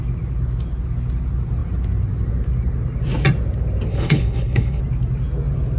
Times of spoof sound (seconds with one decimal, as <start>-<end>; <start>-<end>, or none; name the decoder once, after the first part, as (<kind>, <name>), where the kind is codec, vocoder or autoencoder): 3.9-4.8 (codec, HILCodec)